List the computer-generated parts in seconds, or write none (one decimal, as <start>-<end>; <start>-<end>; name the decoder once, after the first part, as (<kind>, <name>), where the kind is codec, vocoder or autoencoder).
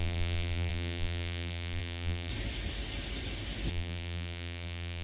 0.0-2.3 (vocoder, BigVGAN v2); 3.7-5.0